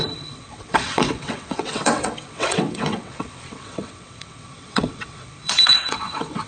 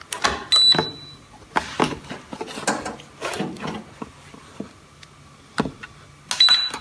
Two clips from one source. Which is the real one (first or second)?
second